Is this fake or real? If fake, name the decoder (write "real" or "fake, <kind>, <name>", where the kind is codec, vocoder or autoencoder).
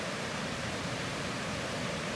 fake, vocoder, BigVGAN v2